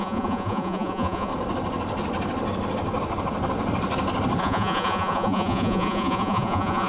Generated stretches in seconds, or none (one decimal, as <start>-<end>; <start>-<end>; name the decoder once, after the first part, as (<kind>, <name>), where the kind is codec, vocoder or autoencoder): 0.0-1.3 (vocoder, Vocos); 4.4-6.9